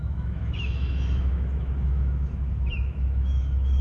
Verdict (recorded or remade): remade